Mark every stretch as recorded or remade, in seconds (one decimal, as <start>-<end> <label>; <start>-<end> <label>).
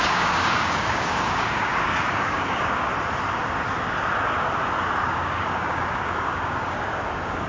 0.0-2.9 remade; 2.9-5.0 recorded; 5.0-7.5 remade